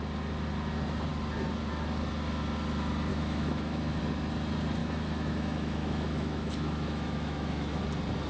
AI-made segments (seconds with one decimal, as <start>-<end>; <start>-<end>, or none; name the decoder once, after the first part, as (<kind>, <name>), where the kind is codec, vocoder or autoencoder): 3.1-4.0 (autoencoder, DAC-VAE); 4.8-7.8